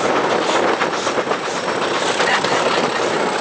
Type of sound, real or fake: real